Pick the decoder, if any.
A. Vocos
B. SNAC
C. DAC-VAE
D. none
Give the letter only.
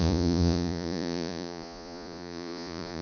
A